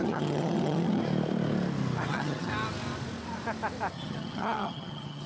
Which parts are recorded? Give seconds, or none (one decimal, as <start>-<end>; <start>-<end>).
1.0-2.1; 2.5-3.9